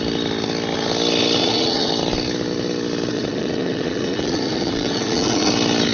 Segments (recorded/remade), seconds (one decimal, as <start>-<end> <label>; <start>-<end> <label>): 0.0-1.4 recorded; 1.4-1.9 remade; 1.9-3.1 recorded; 3.1-5.5 remade; 5.5-5.9 recorded